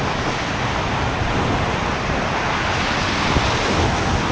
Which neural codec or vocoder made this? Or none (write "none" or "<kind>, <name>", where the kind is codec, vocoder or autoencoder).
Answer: none